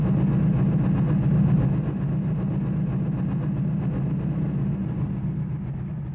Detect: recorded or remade recorded